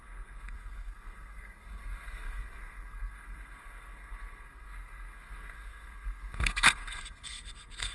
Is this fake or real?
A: fake